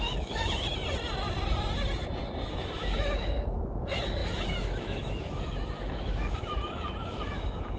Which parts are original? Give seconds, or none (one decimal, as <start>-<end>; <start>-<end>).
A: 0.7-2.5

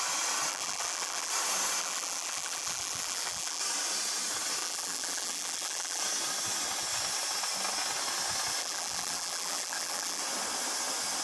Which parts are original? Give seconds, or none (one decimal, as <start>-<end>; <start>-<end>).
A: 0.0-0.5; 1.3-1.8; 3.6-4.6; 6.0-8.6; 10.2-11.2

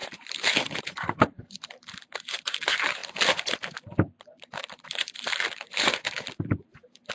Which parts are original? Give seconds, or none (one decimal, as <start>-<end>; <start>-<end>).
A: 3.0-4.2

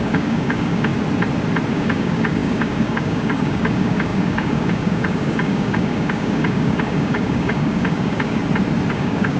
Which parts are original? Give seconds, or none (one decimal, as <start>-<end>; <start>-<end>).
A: 0.9-1.7; 8.4-8.9

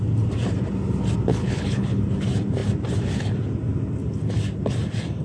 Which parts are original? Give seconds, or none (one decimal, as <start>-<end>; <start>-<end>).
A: 0.0-1.3; 2.0-5.2

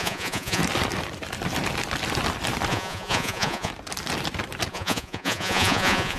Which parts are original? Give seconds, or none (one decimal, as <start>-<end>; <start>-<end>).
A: 0.6-2.7; 3.7-4.7